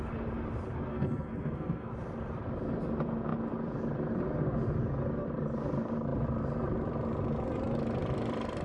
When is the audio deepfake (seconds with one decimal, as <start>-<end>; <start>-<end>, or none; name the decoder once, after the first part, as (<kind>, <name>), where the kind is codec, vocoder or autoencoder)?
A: 0.9-1.9 (codec, SNAC)